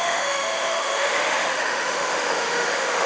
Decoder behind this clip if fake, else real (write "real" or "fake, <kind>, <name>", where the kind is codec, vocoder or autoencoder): fake, autoencoder, DAC-VAE